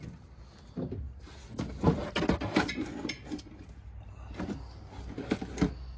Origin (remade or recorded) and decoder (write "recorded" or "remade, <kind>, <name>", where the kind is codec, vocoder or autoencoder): recorded